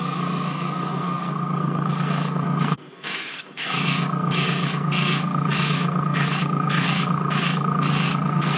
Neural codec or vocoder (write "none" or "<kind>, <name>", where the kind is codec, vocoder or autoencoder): codec, SNAC